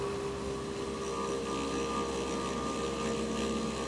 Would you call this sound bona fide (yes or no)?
yes